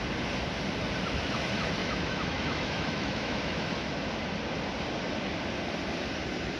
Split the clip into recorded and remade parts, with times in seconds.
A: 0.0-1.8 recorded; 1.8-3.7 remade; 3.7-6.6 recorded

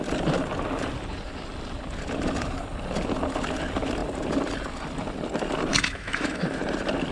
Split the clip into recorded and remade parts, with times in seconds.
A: 0.0-5.7 recorded; 5.7-6.6 remade; 6.6-7.1 recorded

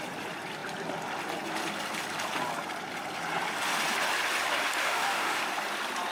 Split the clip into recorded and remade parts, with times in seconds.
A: 0.0-4.8 recorded; 4.8-5.4 remade; 5.4-6.1 recorded

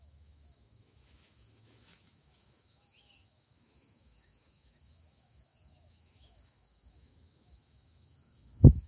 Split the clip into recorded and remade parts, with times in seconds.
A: 0.0-8.9 remade

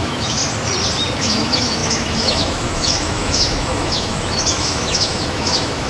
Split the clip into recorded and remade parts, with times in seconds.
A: 0.0-0.4 remade; 0.4-1.2 recorded; 1.2-5.9 remade

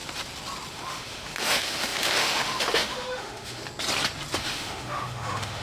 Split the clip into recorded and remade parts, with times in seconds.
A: 0.0-0.7 recorded; 0.7-3.6 remade; 3.6-4.4 recorded; 4.4-5.6 remade